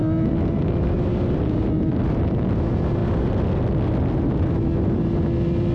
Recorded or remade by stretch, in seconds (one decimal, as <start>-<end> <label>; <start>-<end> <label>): 0.0-5.7 recorded